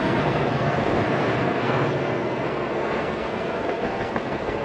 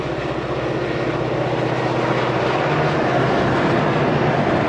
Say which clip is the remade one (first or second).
first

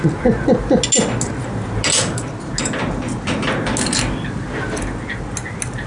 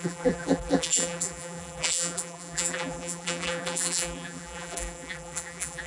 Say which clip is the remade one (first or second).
second